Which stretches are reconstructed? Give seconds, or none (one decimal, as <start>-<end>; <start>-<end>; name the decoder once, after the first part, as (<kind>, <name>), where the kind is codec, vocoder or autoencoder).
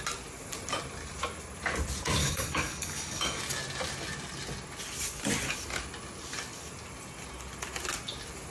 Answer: 2.2-3.4 (codec, DAC)